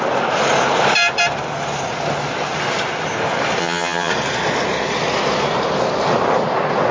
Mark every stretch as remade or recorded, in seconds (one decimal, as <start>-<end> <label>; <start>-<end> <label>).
0.0-3.6 recorded; 3.6-4.1 remade; 4.1-6.9 recorded